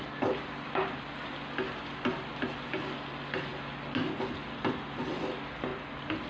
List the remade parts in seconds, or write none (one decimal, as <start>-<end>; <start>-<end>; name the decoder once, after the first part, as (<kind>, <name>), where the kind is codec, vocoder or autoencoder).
none